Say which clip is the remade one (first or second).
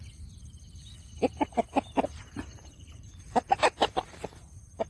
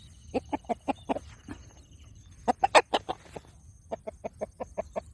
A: first